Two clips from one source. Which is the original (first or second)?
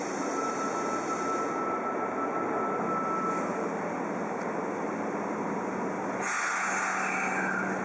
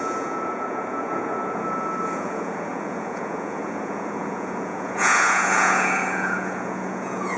first